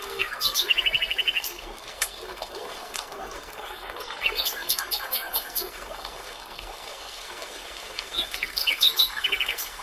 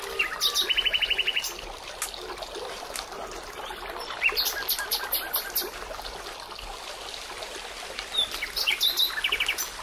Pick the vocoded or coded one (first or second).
first